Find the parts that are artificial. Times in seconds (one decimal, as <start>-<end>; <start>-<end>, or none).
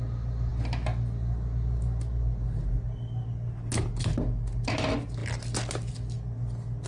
none